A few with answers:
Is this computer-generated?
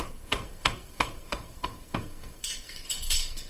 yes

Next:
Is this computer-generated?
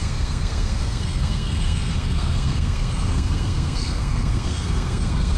yes